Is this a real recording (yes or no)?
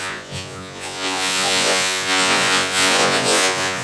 no